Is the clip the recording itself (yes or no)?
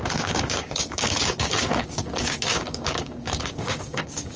no